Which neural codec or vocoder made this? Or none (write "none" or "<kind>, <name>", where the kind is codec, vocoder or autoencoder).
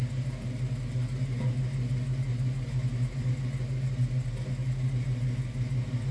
none